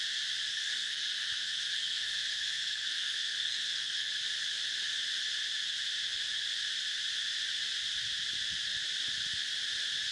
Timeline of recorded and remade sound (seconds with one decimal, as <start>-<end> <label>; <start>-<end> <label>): 0.0-0.5 recorded; 0.5-4.1 remade; 4.1-10.1 recorded